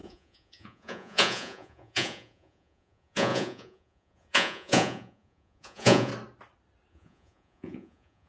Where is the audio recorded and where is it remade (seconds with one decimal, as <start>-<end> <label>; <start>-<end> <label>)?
0.0-6.1 remade; 6.1-6.9 recorded; 6.9-8.3 remade